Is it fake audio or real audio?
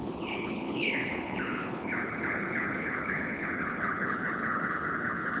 fake